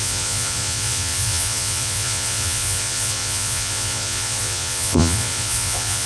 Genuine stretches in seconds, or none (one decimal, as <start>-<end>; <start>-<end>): none